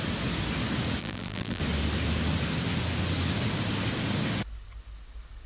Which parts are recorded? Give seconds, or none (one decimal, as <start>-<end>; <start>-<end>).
0.0-1.0; 1.6-5.5